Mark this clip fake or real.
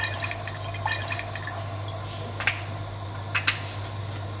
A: real